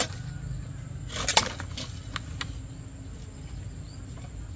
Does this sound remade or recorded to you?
recorded